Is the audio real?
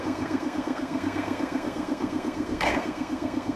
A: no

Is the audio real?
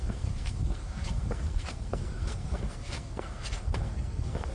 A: no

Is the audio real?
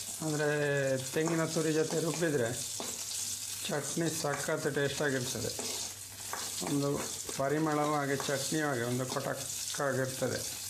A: yes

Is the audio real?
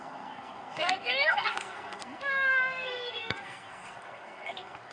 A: no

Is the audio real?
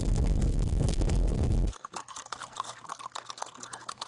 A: no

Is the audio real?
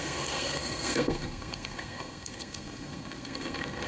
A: no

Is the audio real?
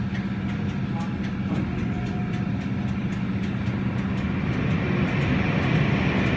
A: yes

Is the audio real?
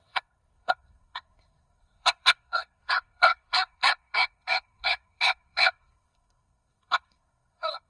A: no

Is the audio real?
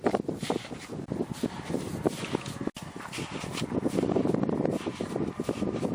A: yes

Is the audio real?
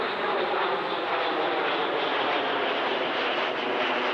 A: yes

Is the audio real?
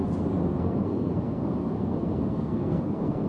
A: no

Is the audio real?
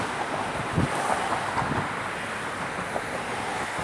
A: yes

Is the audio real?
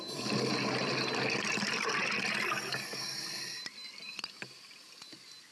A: yes